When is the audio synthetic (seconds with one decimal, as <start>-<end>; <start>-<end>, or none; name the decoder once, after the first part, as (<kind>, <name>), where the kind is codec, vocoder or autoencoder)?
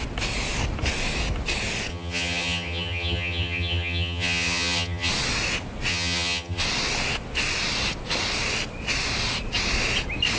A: 1.9-5.1 (vocoder, HiFi-GAN); 5.9-6.6